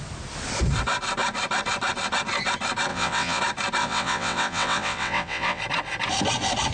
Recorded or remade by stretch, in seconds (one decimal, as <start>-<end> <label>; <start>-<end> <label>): 0.0-2.9 recorded; 2.9-3.4 remade; 3.4-3.8 recorded; 3.8-5.6 remade; 5.6-6.7 recorded